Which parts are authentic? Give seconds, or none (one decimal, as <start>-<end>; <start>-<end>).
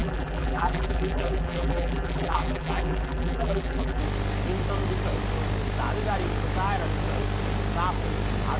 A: 4.0-8.6